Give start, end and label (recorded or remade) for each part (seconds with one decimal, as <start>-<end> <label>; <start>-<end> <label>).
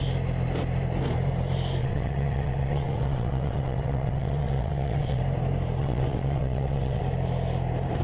0.0-1.8 recorded; 1.8-5.2 remade; 5.2-5.8 recorded; 5.8-7.0 remade; 7.0-8.0 recorded